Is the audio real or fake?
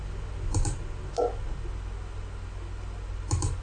real